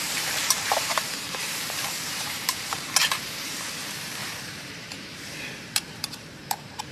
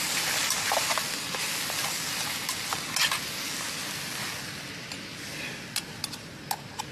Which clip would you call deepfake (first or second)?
first